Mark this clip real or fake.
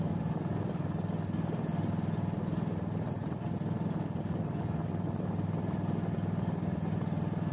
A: real